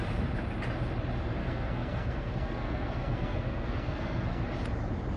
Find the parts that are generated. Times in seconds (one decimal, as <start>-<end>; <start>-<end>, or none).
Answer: 1.4-4.4